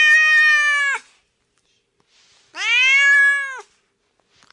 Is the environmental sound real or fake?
real